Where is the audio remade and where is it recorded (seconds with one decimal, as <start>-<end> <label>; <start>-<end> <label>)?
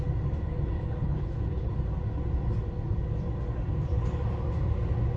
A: 0.0-1.0 recorded; 1.0-1.7 remade; 1.7-5.2 recorded